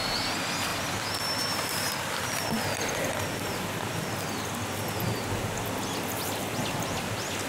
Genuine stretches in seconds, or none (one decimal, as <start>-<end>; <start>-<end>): 0.0-0.7; 2.7-6.5; 7.0-7.5